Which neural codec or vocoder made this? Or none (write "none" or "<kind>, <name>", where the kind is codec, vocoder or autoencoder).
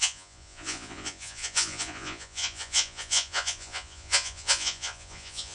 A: vocoder, Vocos